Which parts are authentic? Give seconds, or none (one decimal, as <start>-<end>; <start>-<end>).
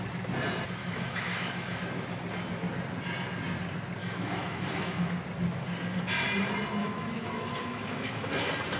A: 0.0-0.8; 1.8-4.0; 5.1-6.8; 8.4-8.8